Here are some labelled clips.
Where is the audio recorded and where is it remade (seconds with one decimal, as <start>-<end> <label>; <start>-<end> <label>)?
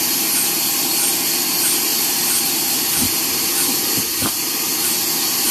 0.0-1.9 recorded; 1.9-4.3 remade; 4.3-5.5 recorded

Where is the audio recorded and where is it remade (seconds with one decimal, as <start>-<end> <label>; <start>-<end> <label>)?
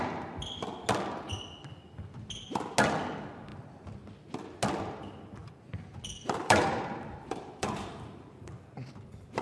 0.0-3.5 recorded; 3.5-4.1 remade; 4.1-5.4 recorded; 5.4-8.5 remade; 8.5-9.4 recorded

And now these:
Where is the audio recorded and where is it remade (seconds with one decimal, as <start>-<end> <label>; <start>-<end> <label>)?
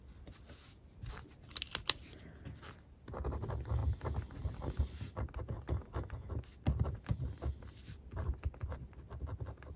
0.0-3.8 recorded; 3.8-5.6 remade; 5.6-7.1 recorded; 7.1-8.3 remade; 8.3-9.8 recorded